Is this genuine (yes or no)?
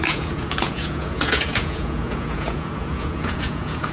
no